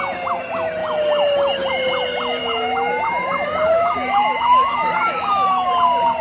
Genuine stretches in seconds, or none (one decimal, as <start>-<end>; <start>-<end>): 0.0-2.4; 5.7-6.2